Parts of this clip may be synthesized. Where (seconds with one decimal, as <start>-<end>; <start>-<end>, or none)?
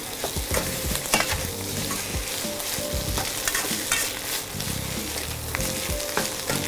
0.6-1.3